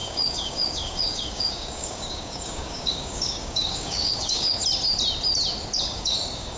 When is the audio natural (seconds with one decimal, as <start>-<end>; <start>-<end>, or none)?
4.6-5.8